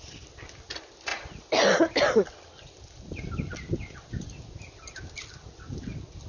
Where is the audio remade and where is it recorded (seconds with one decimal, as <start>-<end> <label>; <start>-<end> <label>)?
0.0-6.3 recorded

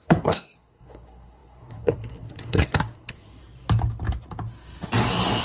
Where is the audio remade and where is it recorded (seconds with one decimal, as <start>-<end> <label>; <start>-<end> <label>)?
0.0-3.4 remade; 3.4-5.4 recorded

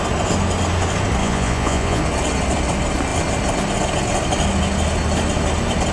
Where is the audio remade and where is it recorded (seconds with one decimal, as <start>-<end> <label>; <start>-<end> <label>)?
0.0-1.2 recorded; 1.2-2.0 remade; 2.0-5.9 recorded

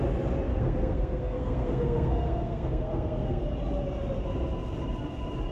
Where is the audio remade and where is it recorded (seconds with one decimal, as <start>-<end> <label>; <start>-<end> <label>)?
0.0-0.5 recorded; 0.5-3.4 remade; 3.4-5.5 recorded

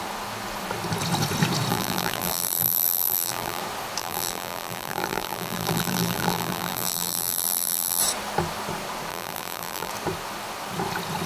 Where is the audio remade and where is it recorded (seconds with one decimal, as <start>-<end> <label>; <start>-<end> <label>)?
0.0-1.7 recorded; 1.7-3.6 remade; 3.6-4.0 recorded; 4.0-8.0 remade; 8.0-9.1 recorded; 9.1-9.9 remade; 9.9-11.3 recorded

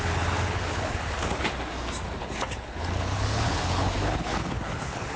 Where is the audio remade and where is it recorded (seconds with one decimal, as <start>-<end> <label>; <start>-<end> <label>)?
0.0-1.5 remade; 1.5-2.2 recorded; 2.2-5.2 remade